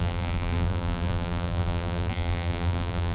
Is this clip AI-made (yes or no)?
yes